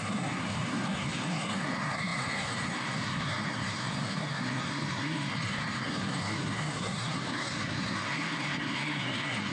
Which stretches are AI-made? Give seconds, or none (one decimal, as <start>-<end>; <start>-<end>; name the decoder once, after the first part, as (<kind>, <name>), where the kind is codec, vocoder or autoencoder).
0.0-9.5 (codec, SNAC)